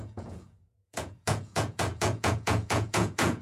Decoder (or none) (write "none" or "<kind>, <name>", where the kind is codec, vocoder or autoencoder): vocoder, Vocos